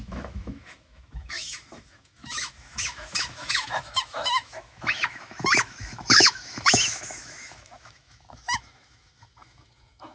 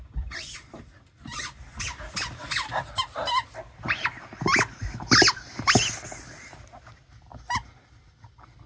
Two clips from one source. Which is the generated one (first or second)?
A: first